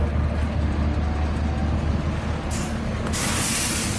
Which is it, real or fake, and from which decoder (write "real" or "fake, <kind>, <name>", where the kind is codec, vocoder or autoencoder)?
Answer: real